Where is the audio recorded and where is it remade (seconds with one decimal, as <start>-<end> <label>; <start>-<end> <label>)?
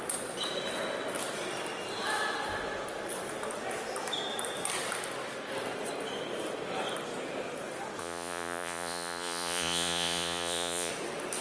0.0-8.0 recorded; 8.0-10.9 remade; 10.9-11.4 recorded